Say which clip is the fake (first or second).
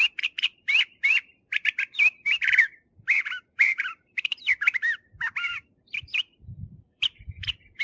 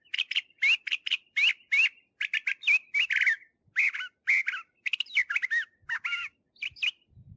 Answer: first